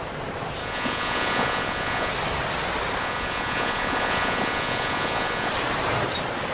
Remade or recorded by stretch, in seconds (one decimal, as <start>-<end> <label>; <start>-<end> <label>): 0.0-0.6 recorded; 0.6-2.1 remade; 2.1-3.0 recorded; 3.0-5.5 remade; 5.5-6.5 recorded